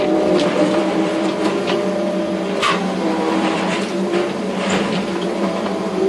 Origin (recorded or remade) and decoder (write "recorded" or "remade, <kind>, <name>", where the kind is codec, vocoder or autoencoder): remade, vocoder, BigVGAN v2